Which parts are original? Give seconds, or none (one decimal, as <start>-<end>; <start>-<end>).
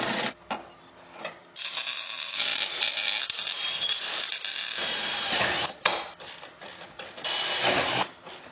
0.0-8.5